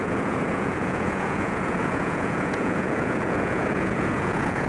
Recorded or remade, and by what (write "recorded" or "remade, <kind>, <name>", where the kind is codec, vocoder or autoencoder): remade, vocoder, Vocos